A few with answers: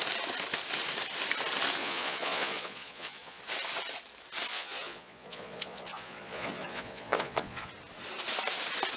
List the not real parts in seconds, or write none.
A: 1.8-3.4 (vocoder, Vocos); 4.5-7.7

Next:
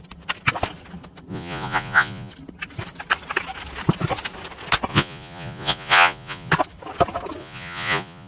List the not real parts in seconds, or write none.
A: 1.3-2.3 (vocoder, Vocos); 4.9-6.5; 7.4-8.3